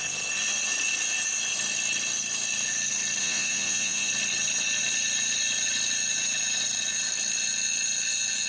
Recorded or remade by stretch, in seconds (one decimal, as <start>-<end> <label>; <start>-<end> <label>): 0.0-3.2 recorded; 3.2-4.1 remade; 4.1-8.5 recorded